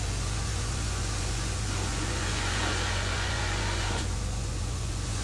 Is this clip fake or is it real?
fake